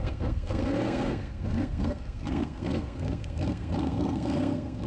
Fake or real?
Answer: fake